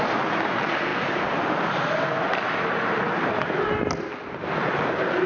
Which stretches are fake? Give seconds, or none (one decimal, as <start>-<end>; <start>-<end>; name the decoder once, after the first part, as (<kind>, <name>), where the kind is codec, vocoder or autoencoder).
none